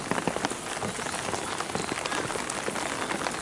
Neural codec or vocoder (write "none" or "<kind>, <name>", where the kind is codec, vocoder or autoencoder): none